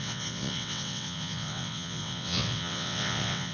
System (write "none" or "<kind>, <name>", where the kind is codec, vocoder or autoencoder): vocoder, WaveNeXt